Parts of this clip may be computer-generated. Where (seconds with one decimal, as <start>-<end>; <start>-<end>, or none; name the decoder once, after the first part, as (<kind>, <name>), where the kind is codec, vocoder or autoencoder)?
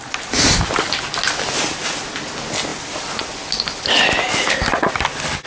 none